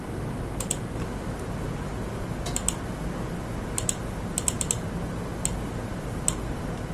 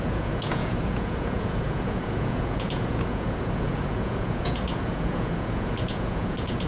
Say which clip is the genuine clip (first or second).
first